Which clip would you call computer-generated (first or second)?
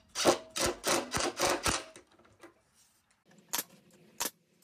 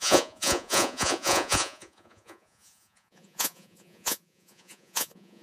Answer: second